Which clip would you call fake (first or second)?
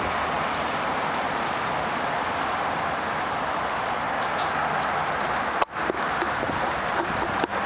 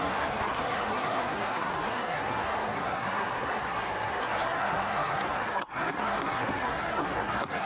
second